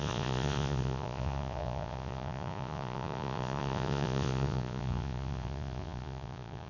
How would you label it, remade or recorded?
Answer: remade